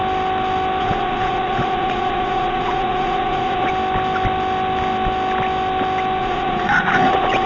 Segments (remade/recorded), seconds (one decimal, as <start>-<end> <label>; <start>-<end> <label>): 0.0-0.8 recorded; 0.8-3.7 remade; 3.7-6.2 recorded; 6.2-7.5 remade